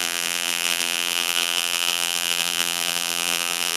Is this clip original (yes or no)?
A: no